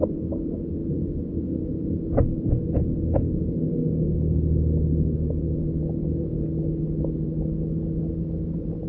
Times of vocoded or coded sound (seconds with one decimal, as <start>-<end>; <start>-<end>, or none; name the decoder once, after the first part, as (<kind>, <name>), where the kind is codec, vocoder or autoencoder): none